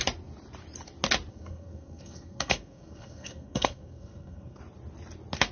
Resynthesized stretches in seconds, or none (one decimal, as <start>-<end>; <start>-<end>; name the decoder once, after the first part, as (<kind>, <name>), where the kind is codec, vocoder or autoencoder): 1.3-4.6 (codec, SNAC)